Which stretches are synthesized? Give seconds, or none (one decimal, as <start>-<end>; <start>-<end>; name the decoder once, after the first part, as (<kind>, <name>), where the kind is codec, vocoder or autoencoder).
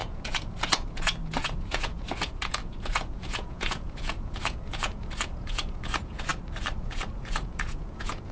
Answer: 0.0-6.3 (vocoder, Vocos); 6.8-8.3